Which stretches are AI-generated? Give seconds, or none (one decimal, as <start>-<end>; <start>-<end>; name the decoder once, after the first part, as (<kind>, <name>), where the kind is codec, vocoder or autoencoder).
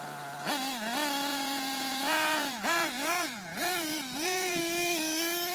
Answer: 1.3-4.6 (vocoder, Vocos)